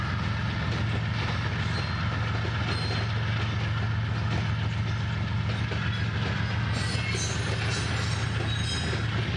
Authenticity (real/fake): real